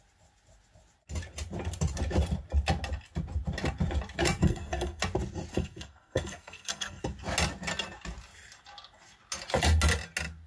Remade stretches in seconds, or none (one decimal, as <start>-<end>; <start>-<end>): 4.4-5.0; 5.5-7.0